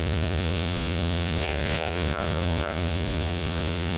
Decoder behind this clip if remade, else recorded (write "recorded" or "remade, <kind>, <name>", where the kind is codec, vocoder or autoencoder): remade, vocoder, Vocos